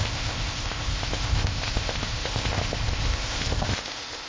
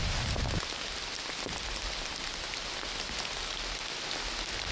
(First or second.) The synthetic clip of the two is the first